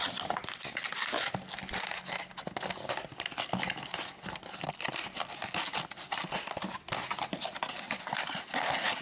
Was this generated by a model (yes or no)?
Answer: no